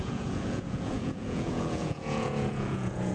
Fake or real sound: fake